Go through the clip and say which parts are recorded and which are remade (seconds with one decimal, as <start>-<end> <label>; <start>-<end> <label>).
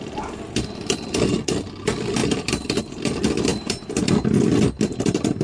0.0-5.4 recorded